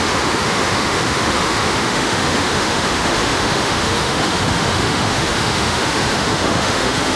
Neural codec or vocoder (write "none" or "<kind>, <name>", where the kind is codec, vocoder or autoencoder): autoencoder, DAC-VAE